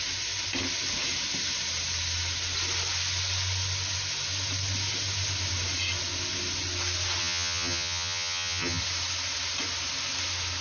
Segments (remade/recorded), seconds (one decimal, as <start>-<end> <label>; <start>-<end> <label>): 0.0-7.2 recorded; 7.2-8.8 remade; 8.8-10.6 recorded